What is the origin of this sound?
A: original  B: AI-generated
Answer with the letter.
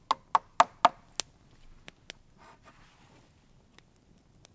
A